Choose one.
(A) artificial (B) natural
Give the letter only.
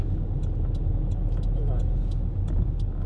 B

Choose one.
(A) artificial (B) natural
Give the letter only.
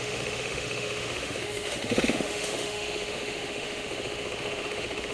A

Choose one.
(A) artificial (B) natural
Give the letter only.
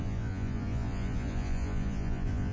A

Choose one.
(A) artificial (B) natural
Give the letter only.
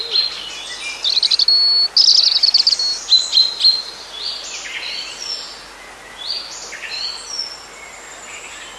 B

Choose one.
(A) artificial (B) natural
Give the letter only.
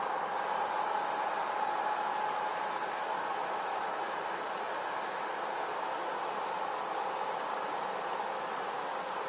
B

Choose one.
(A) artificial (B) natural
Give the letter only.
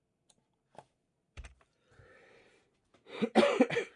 A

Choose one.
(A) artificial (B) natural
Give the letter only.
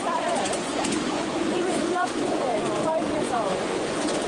A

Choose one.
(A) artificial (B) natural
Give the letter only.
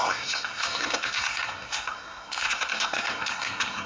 A